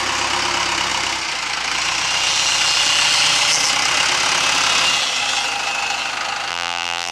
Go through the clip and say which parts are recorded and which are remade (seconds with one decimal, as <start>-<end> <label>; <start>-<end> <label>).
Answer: 0.0-6.5 recorded; 6.5-7.1 remade